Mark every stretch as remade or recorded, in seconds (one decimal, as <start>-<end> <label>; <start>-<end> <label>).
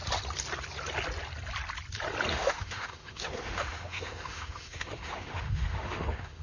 0.0-2.3 recorded; 2.3-6.4 remade